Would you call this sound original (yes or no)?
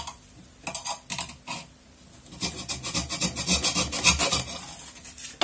yes